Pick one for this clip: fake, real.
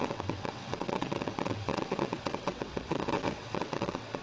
fake